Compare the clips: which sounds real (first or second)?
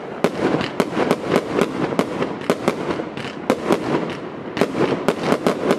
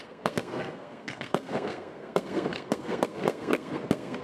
first